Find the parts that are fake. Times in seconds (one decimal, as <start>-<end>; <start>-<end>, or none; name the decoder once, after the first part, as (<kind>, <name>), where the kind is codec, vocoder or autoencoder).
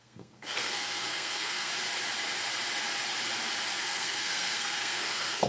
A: 0.0-1.7 (codec, SNAC); 3.8-5.5